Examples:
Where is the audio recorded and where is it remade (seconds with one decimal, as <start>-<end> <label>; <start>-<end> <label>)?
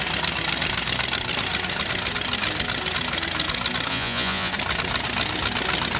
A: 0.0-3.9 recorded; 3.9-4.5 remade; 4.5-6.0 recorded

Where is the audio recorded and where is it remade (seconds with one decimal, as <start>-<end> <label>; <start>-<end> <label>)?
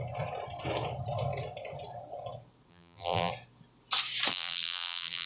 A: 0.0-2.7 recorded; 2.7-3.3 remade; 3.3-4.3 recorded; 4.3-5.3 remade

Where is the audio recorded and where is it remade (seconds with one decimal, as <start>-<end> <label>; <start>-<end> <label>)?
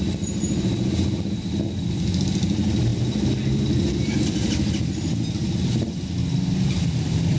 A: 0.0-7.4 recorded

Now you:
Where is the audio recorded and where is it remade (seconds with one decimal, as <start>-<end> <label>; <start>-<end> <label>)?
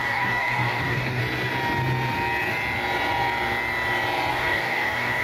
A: 0.0-1.2 remade; 1.2-4.3 recorded; 4.3-5.2 remade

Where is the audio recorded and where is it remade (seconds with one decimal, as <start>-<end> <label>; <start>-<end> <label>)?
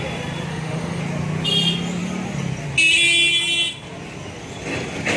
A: 0.0-0.5 recorded; 0.5-1.0 remade; 1.0-5.2 recorded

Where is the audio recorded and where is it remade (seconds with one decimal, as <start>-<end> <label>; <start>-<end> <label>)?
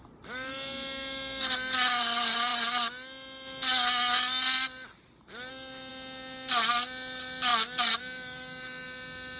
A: 0.0-9.4 recorded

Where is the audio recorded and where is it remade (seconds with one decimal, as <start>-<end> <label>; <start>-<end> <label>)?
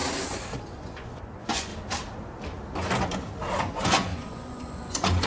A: 0.0-0.6 recorded; 0.6-1.7 remade; 1.7-3.6 recorded; 3.6-5.3 remade